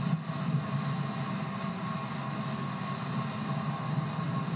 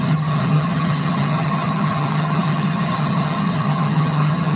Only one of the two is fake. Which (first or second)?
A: second